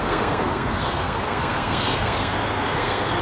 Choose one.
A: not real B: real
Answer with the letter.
A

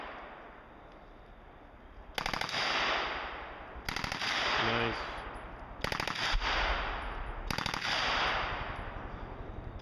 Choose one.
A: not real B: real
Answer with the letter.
B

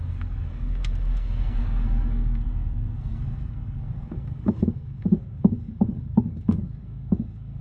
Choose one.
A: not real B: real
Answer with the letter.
A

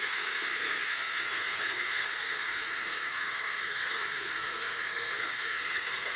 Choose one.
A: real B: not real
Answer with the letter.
B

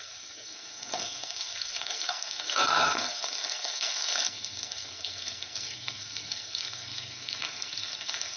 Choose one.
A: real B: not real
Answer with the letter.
B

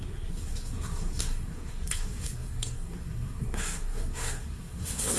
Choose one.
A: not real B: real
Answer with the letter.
A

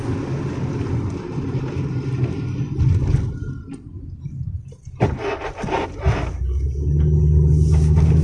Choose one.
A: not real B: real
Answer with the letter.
B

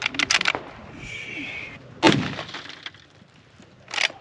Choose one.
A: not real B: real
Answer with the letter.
B